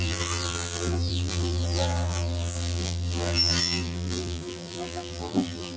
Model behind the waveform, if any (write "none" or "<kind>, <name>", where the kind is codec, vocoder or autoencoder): vocoder, BigVGAN v2